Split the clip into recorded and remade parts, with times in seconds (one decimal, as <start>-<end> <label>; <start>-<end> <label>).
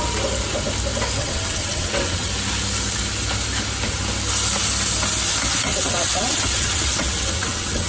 0.0-1.2 recorded; 1.2-2.3 remade; 2.3-5.7 recorded; 5.7-7.9 remade